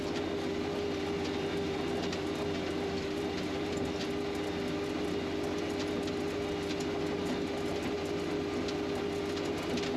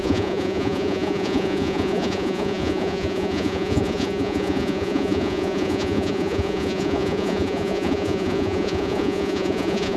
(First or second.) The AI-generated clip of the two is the second